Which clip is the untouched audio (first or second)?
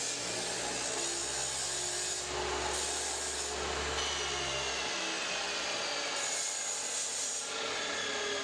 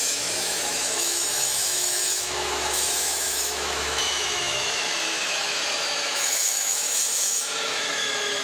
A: first